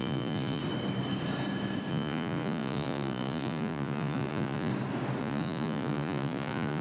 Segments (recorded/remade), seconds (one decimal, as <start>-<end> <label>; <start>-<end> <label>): 0.0-0.6 remade; 0.6-1.9 recorded; 1.9-4.7 remade; 4.7-5.2 recorded; 5.2-6.8 remade